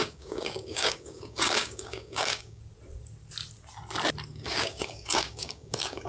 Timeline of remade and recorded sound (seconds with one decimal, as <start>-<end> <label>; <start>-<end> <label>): 0.0-2.6 remade; 2.6-4.3 recorded; 4.3-6.1 remade